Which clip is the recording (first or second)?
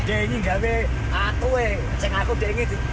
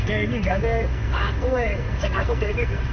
first